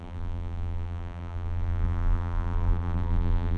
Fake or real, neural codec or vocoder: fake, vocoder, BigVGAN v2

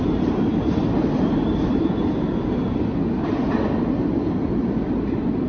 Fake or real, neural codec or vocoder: real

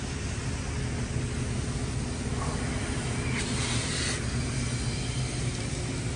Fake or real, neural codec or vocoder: real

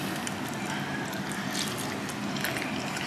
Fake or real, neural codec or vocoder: real